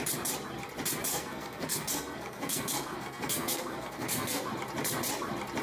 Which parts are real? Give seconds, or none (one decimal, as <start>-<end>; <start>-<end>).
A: 0.0-1.1; 4.5-5.6